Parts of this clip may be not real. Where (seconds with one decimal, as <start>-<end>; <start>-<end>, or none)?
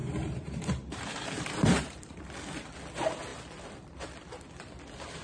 0.0-2.2